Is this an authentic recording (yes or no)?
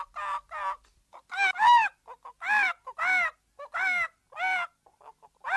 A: yes